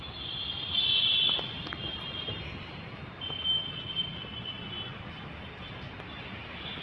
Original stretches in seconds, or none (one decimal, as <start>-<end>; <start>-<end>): 0.0-6.8